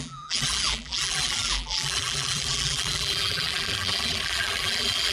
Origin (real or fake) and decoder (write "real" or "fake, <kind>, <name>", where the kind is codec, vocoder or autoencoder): fake, vocoder, BigVGAN v2